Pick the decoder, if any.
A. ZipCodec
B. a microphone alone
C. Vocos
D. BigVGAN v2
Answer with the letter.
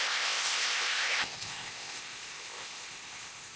A